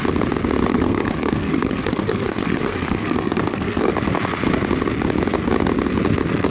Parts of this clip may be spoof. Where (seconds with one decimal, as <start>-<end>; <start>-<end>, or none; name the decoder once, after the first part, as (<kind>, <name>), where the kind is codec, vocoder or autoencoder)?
0.7-3.9 (codec, SNAC)